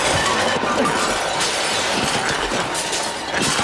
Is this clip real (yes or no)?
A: no